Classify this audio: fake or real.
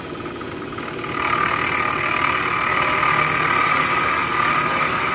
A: real